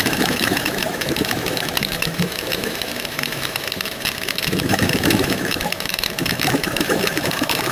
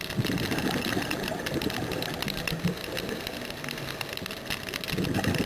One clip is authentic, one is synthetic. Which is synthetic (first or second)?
first